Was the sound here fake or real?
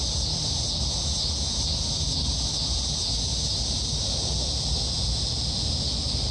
real